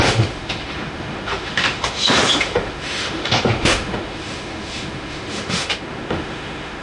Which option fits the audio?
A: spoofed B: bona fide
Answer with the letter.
A